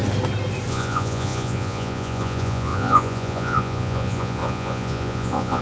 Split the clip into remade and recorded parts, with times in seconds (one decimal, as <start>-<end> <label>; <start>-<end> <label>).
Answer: 0.0-0.7 recorded; 0.7-5.6 remade